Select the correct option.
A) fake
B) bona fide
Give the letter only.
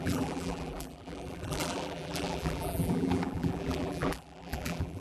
A